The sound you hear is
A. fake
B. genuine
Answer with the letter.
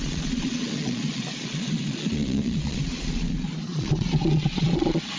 A